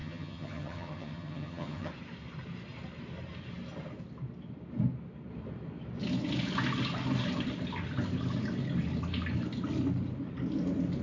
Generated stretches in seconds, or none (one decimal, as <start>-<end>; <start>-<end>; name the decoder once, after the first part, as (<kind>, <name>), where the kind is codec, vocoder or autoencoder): 0.0-1.9 (vocoder, HiFi-GAN)